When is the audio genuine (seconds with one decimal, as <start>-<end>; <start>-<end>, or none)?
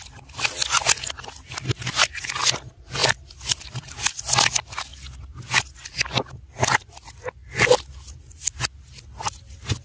0.0-9.8